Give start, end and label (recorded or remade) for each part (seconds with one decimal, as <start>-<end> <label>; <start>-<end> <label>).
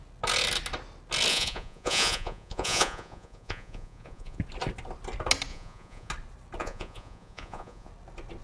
0.0-1.3 recorded; 1.3-4.4 remade; 4.4-5.5 recorded; 5.5-6.1 remade; 6.1-6.6 recorded; 6.6-7.9 remade; 7.9-8.4 recorded